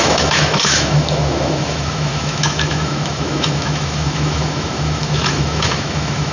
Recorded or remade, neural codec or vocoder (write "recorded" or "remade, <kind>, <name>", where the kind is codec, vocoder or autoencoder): remade, autoencoder, DAC-VAE